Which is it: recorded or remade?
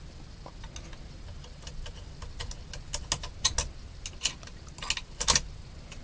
recorded